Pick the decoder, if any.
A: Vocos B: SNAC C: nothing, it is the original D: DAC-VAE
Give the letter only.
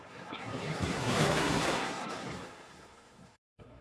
B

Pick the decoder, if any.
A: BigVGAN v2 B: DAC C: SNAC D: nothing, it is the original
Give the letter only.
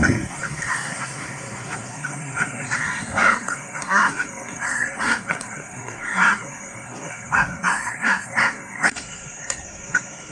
C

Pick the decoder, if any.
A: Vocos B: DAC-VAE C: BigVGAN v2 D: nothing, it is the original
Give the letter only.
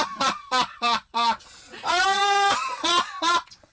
A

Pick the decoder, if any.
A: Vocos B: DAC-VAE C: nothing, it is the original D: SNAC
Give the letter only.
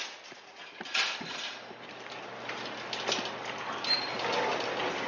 C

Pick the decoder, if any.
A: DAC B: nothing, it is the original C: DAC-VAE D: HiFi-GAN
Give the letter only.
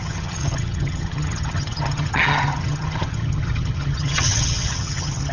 D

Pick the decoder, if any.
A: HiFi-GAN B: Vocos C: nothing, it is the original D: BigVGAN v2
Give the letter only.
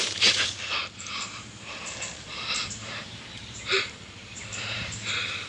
D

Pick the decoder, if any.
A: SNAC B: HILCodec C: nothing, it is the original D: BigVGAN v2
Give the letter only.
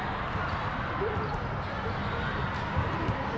C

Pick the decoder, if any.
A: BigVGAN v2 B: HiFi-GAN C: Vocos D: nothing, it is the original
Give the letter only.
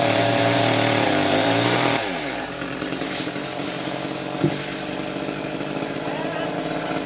A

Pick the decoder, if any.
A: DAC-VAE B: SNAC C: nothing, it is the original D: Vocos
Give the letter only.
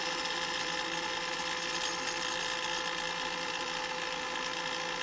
C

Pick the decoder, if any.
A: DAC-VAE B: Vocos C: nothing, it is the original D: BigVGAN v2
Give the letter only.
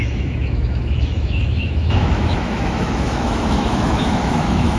A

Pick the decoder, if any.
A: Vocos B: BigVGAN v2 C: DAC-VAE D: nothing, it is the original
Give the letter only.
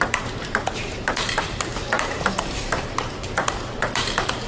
B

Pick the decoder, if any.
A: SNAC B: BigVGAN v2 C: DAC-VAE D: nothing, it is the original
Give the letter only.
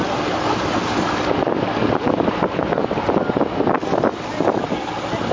D